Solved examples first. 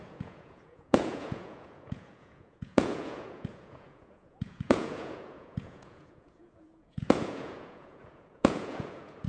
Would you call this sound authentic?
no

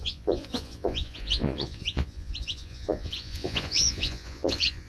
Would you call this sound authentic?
no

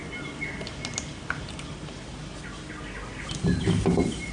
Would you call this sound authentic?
yes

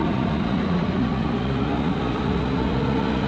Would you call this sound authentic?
no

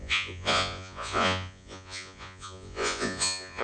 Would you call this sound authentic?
no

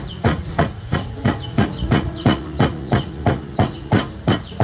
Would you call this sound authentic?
no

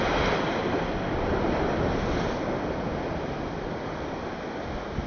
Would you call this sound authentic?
yes